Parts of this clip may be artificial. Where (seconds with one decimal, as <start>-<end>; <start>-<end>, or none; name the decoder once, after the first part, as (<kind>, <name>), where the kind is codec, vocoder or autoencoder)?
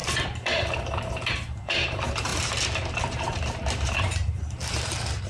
0.0-5.3 (vocoder, BigVGAN v2)